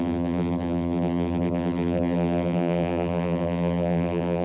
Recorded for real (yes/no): no